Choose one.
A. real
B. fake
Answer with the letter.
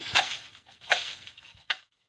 B